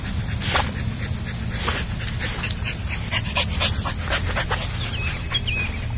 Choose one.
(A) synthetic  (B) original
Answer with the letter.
B